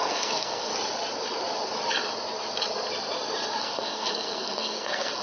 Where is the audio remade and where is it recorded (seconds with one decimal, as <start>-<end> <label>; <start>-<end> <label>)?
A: 0.0-0.7 remade; 0.7-3.6 recorded; 3.6-5.2 remade